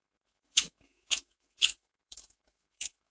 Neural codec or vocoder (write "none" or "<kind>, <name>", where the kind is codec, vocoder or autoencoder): autoencoder, DAC-VAE